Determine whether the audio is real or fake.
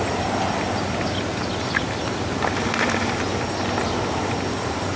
real